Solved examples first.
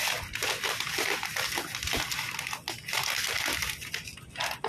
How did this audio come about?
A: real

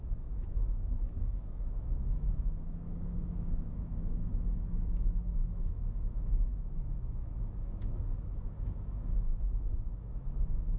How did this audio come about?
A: fake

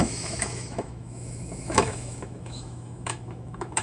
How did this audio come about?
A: fake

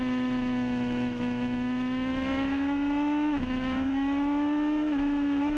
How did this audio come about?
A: fake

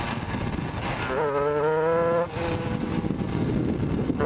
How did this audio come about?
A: real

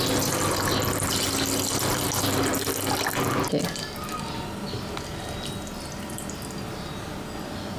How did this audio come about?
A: real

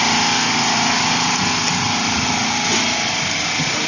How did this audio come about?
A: real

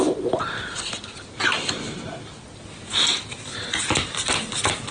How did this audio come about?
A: real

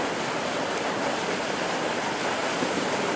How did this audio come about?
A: real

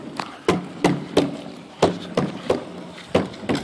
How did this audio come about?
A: real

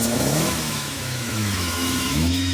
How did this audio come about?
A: fake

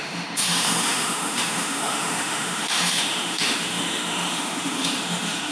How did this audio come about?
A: fake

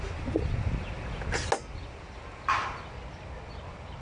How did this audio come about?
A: real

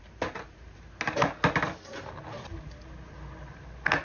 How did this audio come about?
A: real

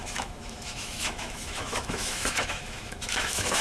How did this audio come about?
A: fake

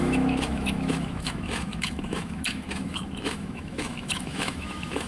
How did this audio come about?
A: fake